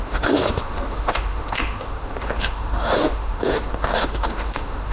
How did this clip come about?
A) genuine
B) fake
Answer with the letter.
B